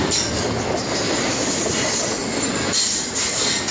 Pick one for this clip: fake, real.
real